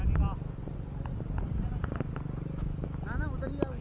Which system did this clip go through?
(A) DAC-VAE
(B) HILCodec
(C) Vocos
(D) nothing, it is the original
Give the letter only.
D